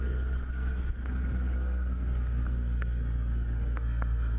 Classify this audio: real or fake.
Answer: fake